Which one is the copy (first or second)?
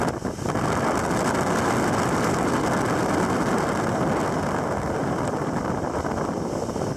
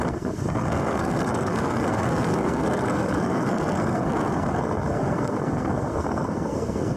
second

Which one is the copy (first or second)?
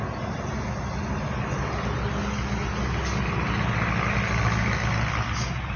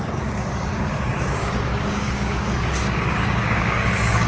second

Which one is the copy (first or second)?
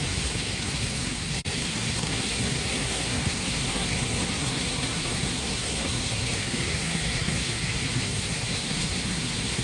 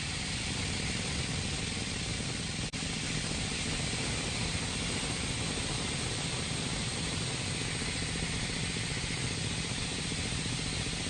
first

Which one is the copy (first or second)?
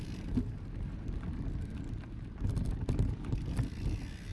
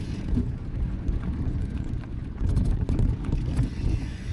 second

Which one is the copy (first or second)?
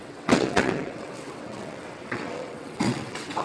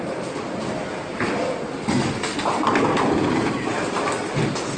first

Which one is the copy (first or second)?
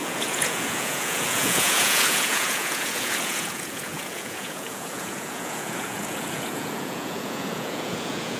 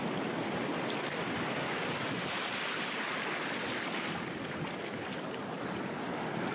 first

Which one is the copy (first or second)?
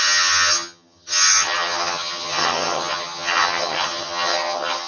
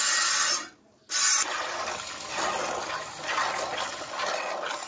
first